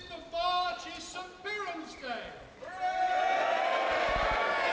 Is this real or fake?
real